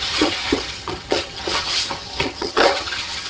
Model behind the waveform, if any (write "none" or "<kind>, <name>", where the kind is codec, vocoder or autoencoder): vocoder, HiFi-GAN